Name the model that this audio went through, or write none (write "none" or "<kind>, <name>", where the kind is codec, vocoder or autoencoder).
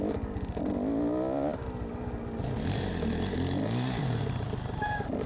none